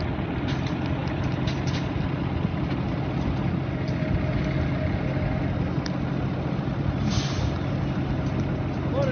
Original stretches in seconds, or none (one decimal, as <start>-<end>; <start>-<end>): 0.0-9.1

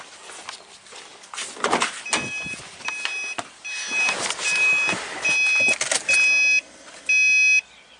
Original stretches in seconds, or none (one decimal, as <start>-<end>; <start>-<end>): 0.0-8.0

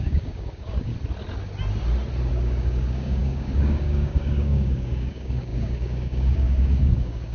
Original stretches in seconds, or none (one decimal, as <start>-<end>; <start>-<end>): 0.9-2.3

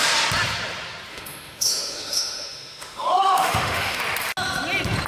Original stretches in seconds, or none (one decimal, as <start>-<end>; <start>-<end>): 0.0-1.1; 4.0-5.1